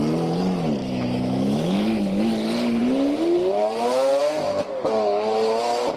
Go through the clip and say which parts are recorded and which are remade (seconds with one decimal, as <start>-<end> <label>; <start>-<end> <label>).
0.0-0.8 recorded; 0.8-2.3 remade; 2.3-6.0 recorded